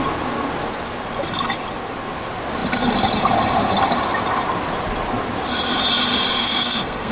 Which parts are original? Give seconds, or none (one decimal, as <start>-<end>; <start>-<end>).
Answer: 0.0-6.4